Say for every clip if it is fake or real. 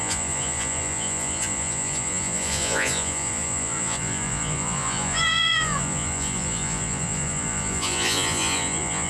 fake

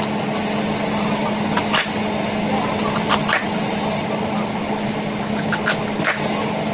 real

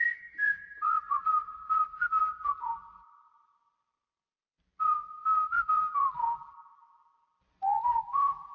real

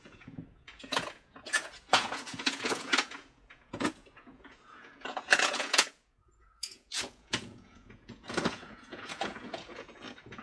fake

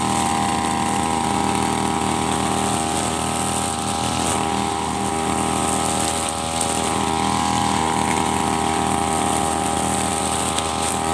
real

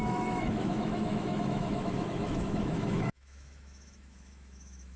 fake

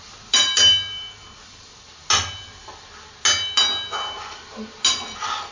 real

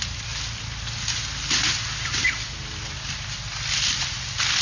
real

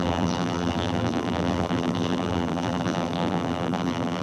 fake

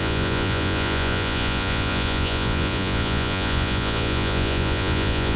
fake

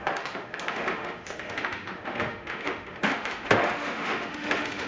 fake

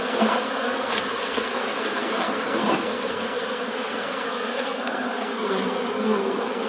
fake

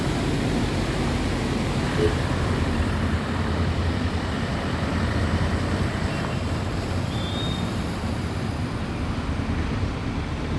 fake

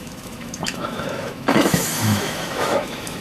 fake